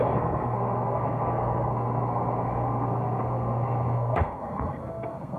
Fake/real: fake